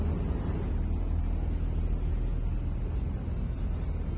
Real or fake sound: real